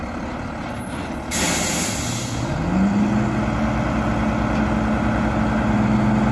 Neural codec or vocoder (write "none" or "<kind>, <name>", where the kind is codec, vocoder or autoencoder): none